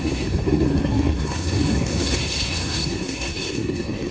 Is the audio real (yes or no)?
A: no